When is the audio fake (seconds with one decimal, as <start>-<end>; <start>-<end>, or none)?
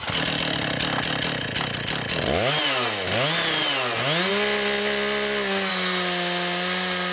none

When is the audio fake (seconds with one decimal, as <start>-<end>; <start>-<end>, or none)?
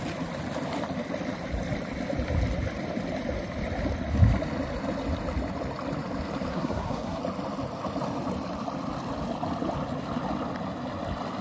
6.5-7.2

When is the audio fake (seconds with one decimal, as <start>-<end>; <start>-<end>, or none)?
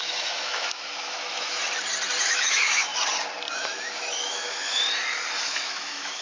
0.0-1.6; 2.2-2.9; 3.6-4.8; 5.4-6.2